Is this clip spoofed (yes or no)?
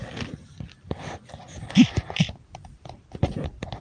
no